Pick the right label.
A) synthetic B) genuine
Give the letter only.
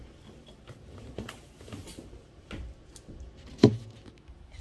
B